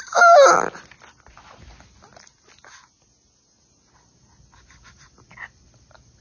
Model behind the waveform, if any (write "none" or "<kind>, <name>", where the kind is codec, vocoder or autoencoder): none